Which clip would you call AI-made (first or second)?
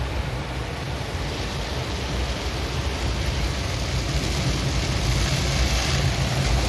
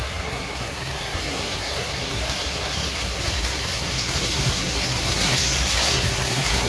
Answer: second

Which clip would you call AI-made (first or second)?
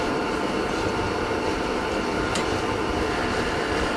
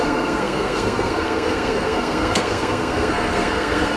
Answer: second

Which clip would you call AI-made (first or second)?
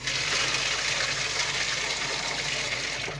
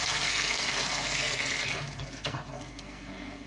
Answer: second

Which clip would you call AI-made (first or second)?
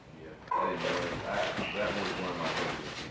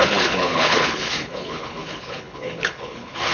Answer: second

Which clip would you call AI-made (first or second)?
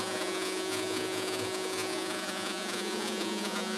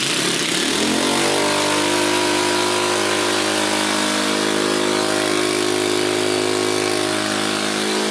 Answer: first